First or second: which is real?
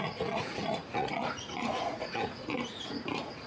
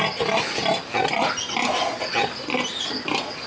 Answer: second